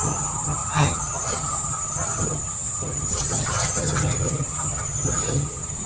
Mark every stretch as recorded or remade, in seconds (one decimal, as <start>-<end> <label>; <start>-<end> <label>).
0.0-5.9 remade